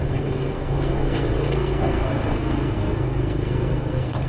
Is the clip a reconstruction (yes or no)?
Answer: yes